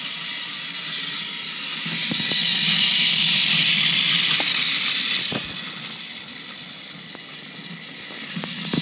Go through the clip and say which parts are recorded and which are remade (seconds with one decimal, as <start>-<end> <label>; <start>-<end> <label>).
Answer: 0.0-8.8 recorded